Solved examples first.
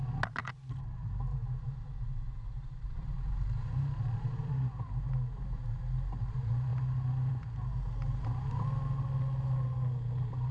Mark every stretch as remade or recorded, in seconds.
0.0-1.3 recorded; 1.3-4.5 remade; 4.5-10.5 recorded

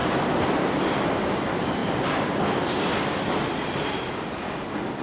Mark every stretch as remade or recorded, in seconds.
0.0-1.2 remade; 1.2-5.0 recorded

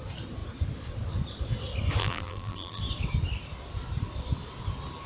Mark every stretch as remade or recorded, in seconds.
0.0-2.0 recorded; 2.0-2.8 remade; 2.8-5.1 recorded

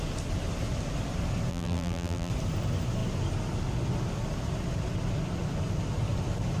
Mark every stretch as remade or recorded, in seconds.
0.0-1.5 recorded; 1.5-2.3 remade; 2.3-6.6 recorded

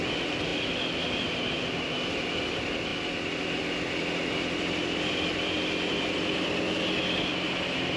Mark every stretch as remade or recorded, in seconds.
0.0-8.0 recorded